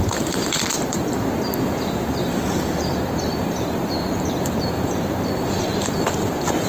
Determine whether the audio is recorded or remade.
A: remade